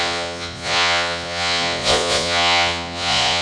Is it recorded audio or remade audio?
remade